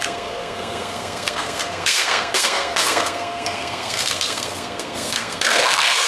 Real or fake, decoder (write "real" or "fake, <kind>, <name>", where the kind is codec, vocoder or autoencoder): fake, codec, SNAC